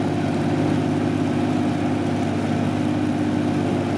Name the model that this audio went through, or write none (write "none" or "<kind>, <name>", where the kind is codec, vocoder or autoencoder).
none